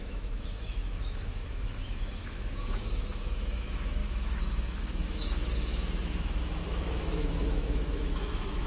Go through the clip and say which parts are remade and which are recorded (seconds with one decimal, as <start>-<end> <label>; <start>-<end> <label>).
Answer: 0.0-8.7 remade